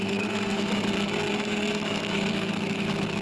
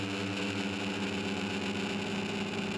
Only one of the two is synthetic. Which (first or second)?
first